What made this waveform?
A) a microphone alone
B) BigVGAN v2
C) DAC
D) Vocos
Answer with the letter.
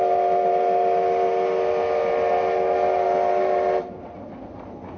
A